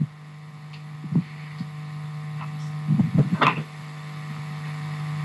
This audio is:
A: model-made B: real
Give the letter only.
B